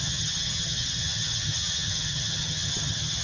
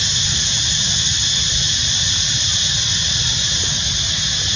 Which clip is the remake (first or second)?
first